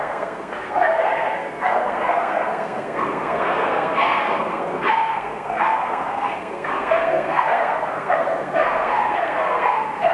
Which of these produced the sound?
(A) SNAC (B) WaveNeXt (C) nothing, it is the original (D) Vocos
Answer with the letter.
A